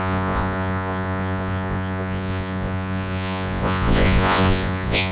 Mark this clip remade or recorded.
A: remade